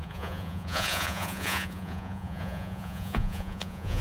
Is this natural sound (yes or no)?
no